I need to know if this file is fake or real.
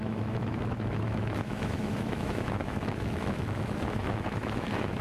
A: fake